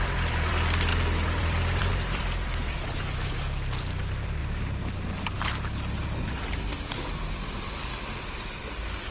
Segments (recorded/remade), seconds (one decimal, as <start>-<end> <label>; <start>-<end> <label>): 0.0-4.4 remade; 4.4-7.3 recorded; 7.3-9.1 remade